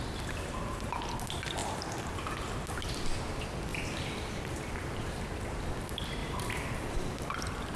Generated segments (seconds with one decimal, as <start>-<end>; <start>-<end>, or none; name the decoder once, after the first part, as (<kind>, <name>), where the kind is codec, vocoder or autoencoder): 1.6-2.1 (vocoder, BigVGAN v2); 3.7-5.2; 6.2-7.3